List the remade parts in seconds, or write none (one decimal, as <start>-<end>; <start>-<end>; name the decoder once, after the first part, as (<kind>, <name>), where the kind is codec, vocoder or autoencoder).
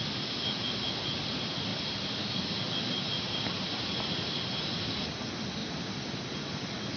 none